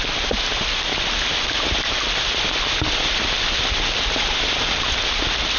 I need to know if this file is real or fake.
real